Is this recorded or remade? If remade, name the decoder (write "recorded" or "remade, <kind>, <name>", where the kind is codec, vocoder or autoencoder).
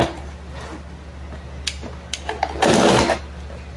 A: recorded